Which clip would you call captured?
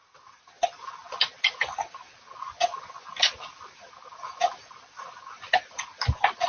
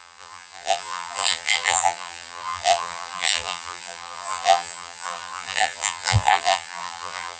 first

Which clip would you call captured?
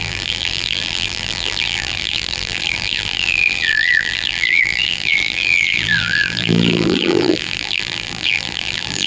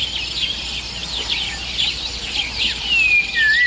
second